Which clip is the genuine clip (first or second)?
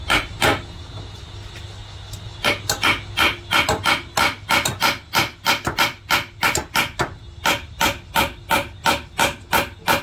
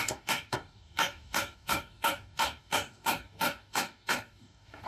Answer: first